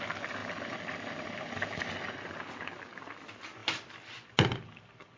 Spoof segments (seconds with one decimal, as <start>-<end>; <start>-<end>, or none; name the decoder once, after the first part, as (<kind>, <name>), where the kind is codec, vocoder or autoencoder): none